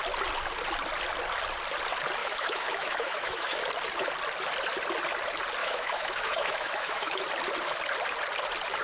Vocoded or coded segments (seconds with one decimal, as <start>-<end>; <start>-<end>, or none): 2.2-3.7; 5.6-7.2